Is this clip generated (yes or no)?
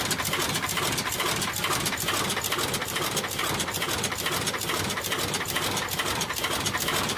no